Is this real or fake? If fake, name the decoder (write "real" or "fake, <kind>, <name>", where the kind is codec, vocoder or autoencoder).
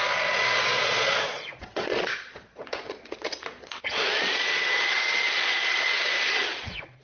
fake, vocoder, Vocos